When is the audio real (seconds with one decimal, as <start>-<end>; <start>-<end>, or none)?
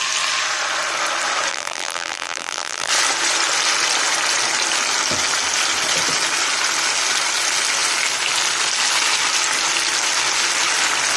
0.0-1.5; 2.9-11.2